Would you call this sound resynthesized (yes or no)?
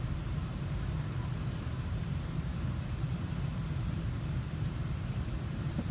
yes